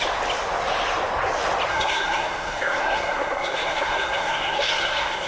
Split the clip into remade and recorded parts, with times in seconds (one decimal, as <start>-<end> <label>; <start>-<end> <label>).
0.0-1.7 recorded; 1.7-5.3 remade